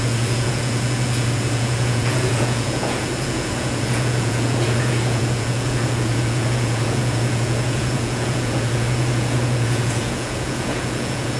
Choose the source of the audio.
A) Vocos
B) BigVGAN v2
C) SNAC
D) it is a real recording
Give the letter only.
A